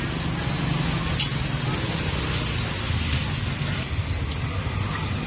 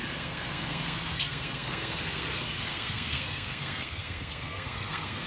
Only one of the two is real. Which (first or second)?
first